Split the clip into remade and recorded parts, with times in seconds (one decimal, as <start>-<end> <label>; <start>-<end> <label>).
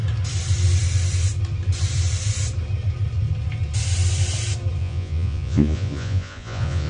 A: 0.0-4.8 recorded; 4.8-6.9 remade